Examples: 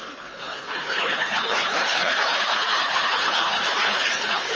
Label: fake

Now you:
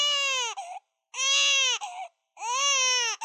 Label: real